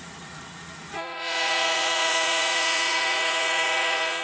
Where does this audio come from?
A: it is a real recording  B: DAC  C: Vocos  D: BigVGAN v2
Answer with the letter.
C